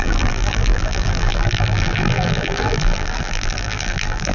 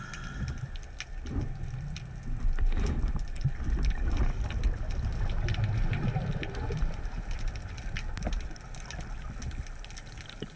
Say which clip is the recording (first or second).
second